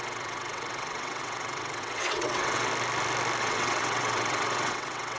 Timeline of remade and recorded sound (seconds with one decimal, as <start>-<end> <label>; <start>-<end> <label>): 0.0-2.7 remade; 2.7-3.4 recorded; 3.4-5.2 remade